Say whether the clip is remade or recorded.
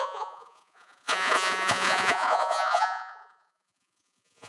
remade